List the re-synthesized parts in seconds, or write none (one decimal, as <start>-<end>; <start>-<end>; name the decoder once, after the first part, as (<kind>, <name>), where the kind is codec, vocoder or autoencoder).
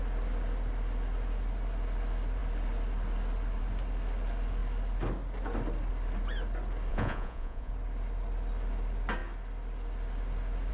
6.9-7.7 (vocoder, Vocos)